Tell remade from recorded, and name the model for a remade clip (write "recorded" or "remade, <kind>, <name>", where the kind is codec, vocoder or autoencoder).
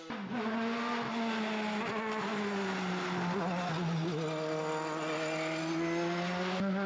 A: recorded